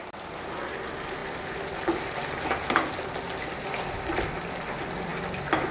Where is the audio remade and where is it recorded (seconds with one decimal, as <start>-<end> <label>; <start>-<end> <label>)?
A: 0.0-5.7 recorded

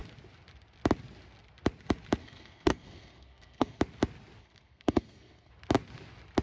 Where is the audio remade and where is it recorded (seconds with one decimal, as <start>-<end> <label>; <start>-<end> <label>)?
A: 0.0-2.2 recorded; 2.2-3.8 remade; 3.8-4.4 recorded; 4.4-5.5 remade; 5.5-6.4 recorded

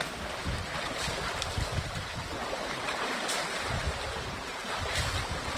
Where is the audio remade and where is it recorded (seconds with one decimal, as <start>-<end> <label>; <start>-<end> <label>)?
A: 0.0-2.4 recorded; 2.4-5.1 remade; 5.1-5.6 recorded

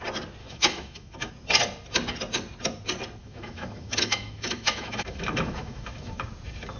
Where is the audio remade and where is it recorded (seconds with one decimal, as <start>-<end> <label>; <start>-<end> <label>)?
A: 0.0-0.4 recorded; 0.4-1.3 remade; 1.3-3.2 recorded; 3.2-6.3 remade; 6.3-6.8 recorded

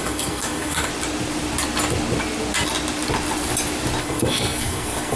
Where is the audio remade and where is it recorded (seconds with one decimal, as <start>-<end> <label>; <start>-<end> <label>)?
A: 0.0-0.9 remade; 0.9-4.0 recorded; 4.0-5.2 remade

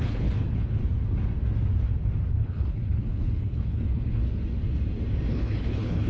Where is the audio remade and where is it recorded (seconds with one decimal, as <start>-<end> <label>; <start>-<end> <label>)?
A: 0.0-0.8 remade; 0.8-2.3 recorded; 2.3-4.2 remade; 4.2-5.3 recorded; 5.3-6.1 remade

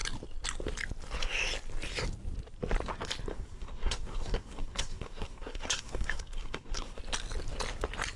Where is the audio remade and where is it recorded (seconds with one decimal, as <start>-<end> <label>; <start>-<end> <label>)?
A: 0.0-3.3 recorded; 3.3-7.0 remade; 7.0-8.2 recorded

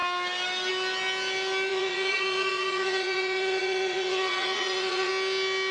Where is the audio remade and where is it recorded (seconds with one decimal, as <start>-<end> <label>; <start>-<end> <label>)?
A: 0.0-1.7 recorded; 1.7-5.1 remade; 5.1-5.7 recorded